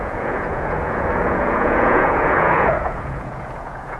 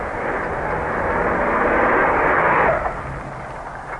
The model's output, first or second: first